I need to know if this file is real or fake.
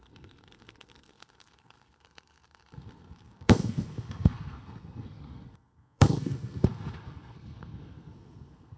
fake